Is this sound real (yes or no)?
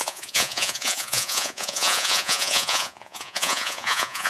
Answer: no